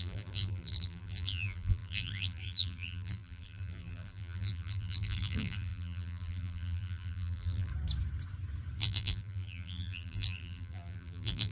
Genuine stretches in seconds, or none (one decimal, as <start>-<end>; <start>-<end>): 7.7-8.8